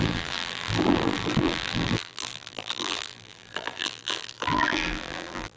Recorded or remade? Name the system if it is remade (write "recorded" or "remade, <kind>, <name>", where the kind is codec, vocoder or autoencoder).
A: remade, vocoder, BigVGAN v2